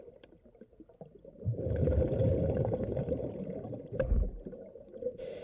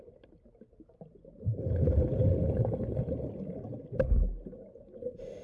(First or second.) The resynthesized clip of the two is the first